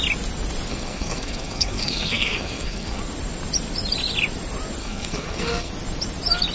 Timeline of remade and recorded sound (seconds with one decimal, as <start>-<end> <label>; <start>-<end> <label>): 0.0-0.7 recorded; 0.7-3.0 remade; 3.0-4.8 recorded; 4.8-5.7 remade; 5.7-6.5 recorded